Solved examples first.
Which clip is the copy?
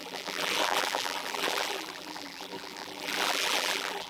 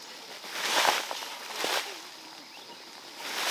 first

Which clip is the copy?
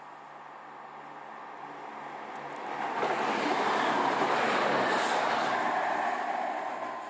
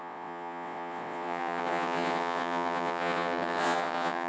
second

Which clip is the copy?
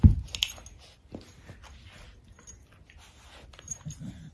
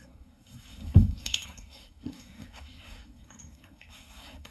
second